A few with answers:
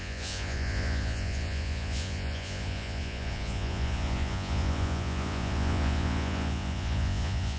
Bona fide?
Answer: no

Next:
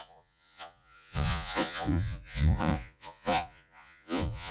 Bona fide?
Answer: no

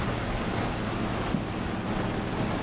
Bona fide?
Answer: yes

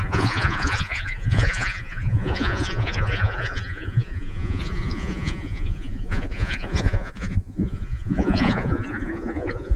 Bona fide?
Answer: no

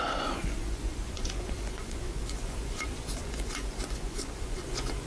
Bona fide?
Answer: no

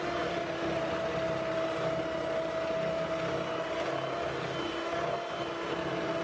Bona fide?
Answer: yes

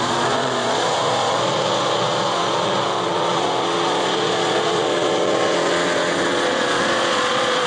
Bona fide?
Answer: no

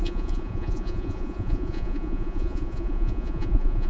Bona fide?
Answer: no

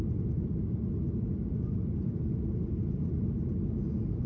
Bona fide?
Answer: yes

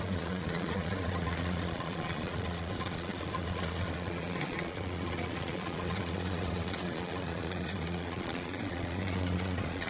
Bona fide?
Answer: no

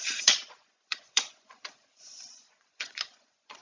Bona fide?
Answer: no